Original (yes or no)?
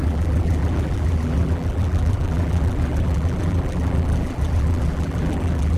no